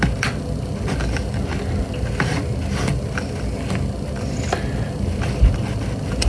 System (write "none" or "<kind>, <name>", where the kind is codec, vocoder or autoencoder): none